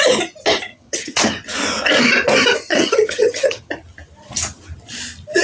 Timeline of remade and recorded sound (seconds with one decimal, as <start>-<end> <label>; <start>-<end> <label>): 0.0-0.7 recorded; 0.7-1.2 remade; 1.2-2.7 recorded; 2.7-3.7 remade; 3.7-5.4 recorded

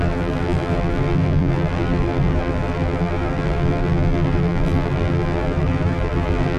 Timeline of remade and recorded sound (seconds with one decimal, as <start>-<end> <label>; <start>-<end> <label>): 0.0-6.6 remade

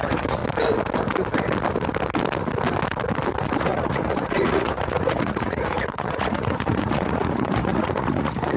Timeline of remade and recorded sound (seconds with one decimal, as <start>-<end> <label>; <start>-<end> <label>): 0.0-0.4 remade; 0.4-3.6 recorded; 3.6-8.6 remade